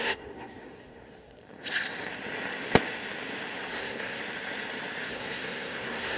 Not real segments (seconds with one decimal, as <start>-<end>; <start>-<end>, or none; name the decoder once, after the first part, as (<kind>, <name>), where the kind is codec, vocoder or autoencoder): 0.0-1.4 (codec, SNAC); 3.7-4.2; 5.1-6.2